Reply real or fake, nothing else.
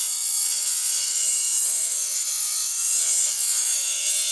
fake